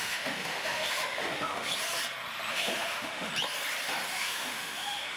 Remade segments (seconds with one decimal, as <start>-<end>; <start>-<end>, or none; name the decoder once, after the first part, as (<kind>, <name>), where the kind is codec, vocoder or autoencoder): 0.0-1.7 (autoencoder, DAC-VAE); 2.5-3.3; 4.1-5.2